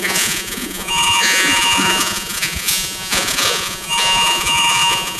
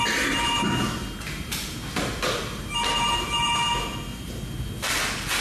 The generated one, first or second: first